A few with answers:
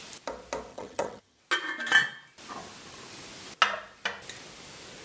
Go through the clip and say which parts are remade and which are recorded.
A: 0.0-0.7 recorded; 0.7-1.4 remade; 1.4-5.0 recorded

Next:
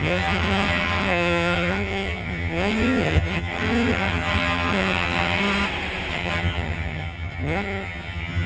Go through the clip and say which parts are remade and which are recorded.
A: 0.0-5.4 remade; 5.4-6.1 recorded; 6.1-8.5 remade

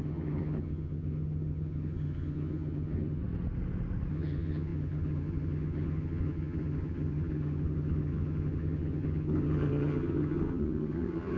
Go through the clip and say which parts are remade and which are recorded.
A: 0.0-3.2 remade; 3.2-4.1 recorded; 4.1-11.4 remade